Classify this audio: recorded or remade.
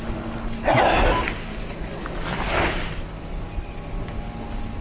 recorded